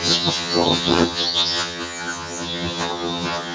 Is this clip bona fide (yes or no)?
no